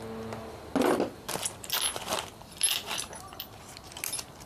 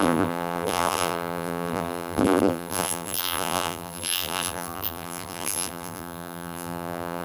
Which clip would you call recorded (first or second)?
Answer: first